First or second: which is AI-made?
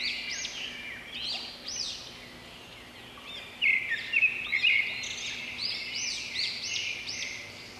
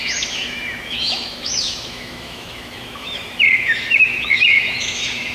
second